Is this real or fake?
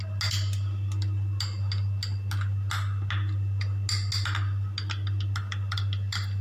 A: real